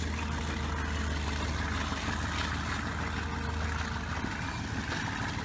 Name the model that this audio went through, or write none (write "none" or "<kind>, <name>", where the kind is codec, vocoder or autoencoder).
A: none